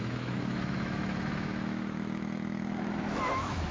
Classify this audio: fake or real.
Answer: fake